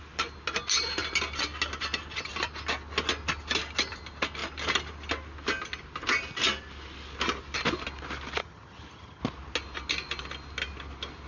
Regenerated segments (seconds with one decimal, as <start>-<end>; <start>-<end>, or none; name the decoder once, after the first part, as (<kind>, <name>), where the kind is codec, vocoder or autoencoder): 8.4-9.2 (vocoder, HiFi-GAN)